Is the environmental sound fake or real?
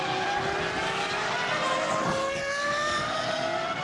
real